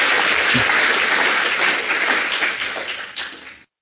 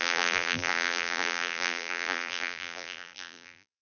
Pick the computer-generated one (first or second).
second